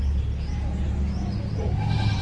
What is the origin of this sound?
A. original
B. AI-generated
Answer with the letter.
A